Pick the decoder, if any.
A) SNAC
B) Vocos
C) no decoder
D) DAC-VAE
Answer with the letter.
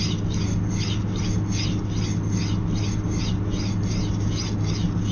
C